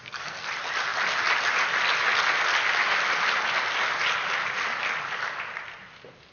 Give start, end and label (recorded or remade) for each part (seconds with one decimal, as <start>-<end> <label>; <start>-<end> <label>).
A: 0.0-0.5 remade; 0.5-6.3 recorded